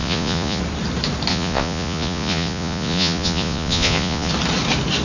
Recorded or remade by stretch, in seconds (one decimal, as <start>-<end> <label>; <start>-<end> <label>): 0.0-0.6 remade; 0.6-1.3 recorded; 1.3-4.3 remade; 4.3-5.0 recorded

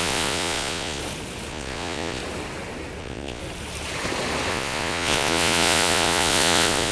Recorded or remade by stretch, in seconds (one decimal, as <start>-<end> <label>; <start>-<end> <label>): 0.0-1.0 remade; 1.0-1.5 recorded; 1.5-2.2 remade; 2.2-3.0 recorded; 3.0-3.4 remade; 3.4-4.5 recorded; 4.5-6.9 remade

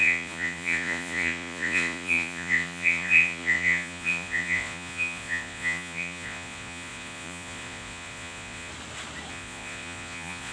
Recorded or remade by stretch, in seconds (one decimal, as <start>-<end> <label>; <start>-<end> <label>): 0.0-8.7 remade; 8.7-9.3 recorded; 9.3-10.5 remade

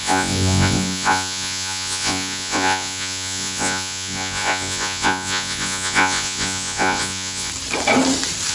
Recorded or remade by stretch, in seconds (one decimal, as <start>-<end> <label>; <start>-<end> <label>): 0.0-7.5 remade; 7.5-8.5 recorded